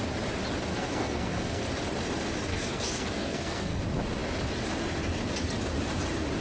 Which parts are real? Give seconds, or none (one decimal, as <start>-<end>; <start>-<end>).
0.0-0.7; 1.7-2.5; 3.8-6.4